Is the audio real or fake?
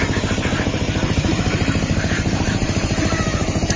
fake